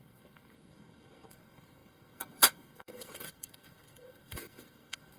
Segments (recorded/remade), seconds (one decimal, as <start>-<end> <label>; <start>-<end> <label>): 0.0-5.2 remade